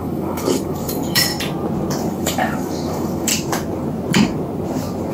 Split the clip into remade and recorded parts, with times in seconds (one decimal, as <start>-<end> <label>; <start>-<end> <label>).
0.0-1.3 remade; 1.3-2.1 recorded; 2.1-3.3 remade; 3.3-5.1 recorded